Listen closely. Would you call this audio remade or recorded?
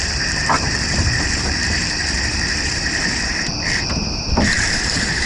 remade